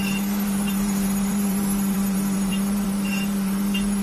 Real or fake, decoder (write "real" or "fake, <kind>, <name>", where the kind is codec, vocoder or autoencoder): fake, vocoder, BigVGAN v2